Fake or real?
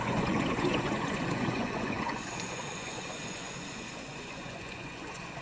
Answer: fake